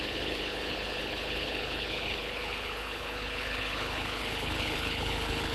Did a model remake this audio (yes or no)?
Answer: yes